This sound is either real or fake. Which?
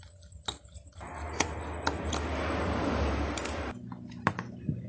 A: real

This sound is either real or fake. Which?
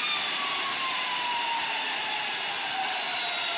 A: real